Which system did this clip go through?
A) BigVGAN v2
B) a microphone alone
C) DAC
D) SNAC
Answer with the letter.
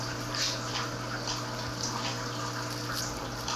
B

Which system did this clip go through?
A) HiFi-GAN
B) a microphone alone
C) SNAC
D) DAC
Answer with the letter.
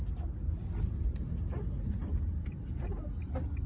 B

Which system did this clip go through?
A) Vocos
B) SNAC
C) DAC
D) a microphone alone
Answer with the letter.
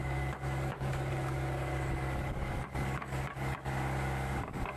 C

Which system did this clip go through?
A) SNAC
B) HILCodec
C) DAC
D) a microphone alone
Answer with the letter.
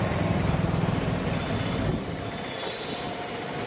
D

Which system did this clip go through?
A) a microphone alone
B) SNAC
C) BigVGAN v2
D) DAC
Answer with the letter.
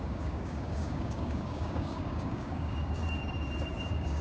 D